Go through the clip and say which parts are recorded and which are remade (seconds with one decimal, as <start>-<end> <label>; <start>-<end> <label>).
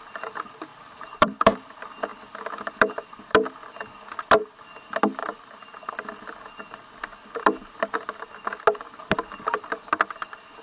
0.0-0.7 recorded; 0.7-1.7 remade; 1.7-10.6 recorded